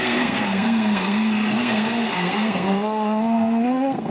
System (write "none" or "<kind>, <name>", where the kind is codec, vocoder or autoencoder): codec, SNAC